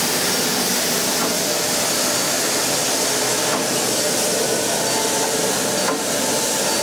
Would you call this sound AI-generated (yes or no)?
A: no